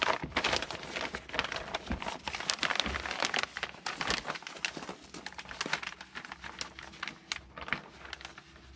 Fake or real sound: real